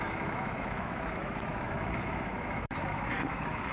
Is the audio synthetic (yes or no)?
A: yes